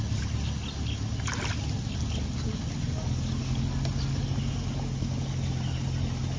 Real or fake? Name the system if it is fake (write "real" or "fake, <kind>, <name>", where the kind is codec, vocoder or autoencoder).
real